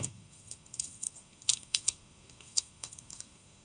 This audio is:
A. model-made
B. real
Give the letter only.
A